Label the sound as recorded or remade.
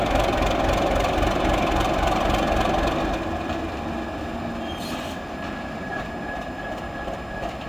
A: recorded